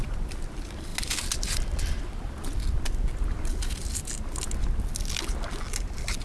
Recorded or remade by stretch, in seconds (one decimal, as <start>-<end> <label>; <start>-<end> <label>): 0.0-6.2 recorded

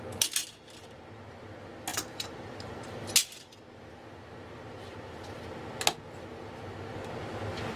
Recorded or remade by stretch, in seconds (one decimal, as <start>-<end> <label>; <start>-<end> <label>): 0.0-1.9 recorded; 1.9-3.1 remade; 3.1-7.8 recorded

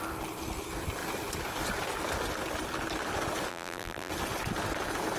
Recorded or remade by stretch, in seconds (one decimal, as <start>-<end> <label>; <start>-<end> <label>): 0.0-3.5 recorded; 3.5-4.1 remade; 4.1-5.2 recorded